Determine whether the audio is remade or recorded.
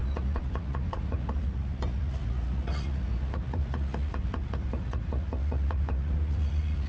remade